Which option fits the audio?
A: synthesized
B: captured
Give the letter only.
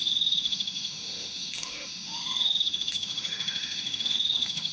A